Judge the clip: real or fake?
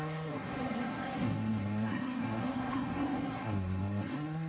fake